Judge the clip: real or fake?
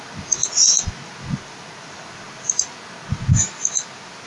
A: real